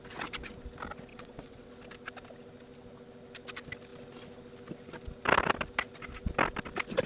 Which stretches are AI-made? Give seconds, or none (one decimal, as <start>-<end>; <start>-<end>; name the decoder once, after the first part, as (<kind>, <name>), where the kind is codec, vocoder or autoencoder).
1.1-1.7 (vocoder, WaveNeXt)